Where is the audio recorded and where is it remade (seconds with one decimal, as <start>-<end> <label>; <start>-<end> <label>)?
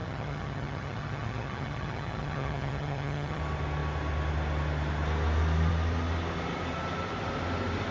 0.0-3.4 remade; 3.4-7.9 recorded